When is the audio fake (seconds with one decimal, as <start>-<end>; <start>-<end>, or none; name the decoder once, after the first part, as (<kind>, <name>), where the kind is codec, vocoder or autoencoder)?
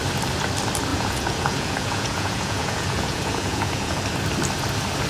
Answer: 0.9-4.0 (vocoder, Vocos)